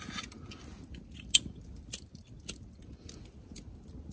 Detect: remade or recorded recorded